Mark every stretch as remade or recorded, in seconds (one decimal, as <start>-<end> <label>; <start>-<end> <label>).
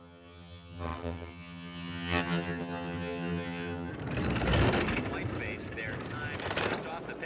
0.0-3.9 remade; 3.9-7.3 recorded